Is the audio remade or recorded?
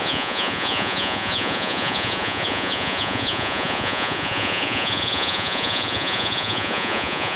remade